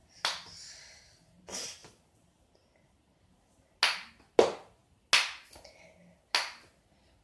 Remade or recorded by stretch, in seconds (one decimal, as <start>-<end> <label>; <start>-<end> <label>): 0.0-7.2 recorded